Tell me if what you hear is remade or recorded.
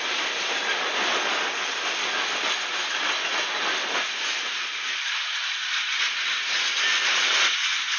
recorded